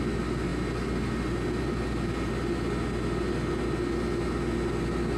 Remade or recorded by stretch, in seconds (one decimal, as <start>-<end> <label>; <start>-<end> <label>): 0.0-5.2 recorded